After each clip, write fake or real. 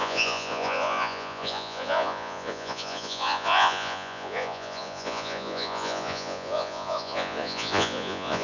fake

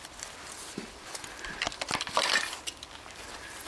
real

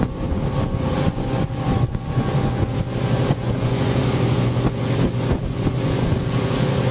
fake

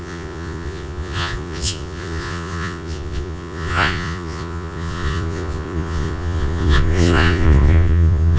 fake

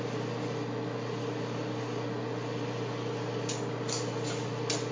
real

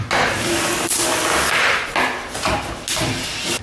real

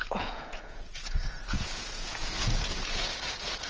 fake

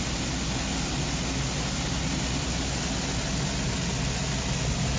real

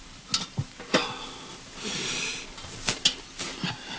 real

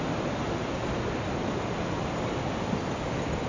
real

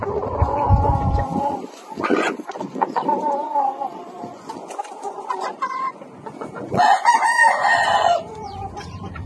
fake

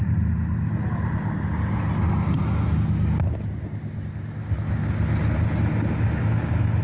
real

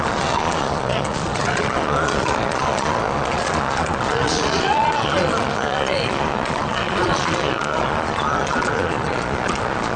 fake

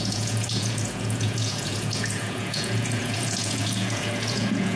fake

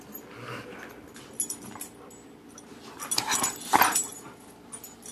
real